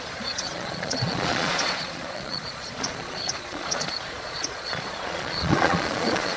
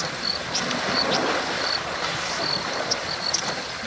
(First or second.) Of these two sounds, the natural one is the second